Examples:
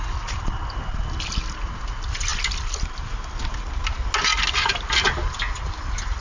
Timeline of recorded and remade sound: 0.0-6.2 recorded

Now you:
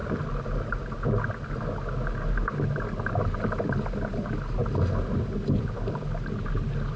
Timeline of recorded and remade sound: 0.0-7.0 recorded